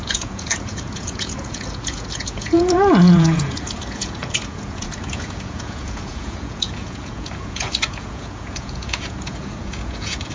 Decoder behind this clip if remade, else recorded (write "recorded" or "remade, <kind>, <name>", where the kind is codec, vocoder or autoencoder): remade, vocoder, Vocos